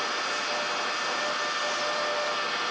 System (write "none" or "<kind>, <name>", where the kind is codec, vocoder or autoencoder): none